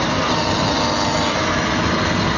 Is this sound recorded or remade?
recorded